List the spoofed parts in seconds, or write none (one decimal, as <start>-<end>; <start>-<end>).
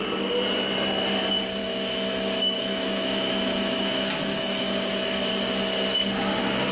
1.6-5.3